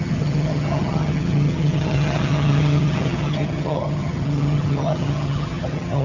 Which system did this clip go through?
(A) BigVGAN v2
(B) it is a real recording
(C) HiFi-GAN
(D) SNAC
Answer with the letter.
C